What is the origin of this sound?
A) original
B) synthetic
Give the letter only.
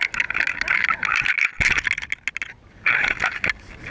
A